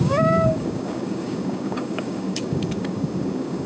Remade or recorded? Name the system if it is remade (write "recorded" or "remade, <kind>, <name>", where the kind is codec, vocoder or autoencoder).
remade, codec, DAC